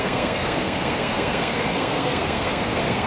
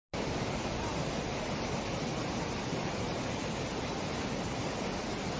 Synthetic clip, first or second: first